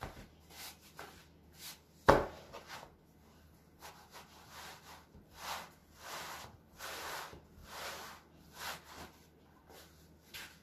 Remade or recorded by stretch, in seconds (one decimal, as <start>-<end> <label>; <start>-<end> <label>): 0.0-5.8 recorded; 5.8-6.8 remade; 6.8-7.6 recorded; 7.6-9.7 remade; 9.7-10.6 recorded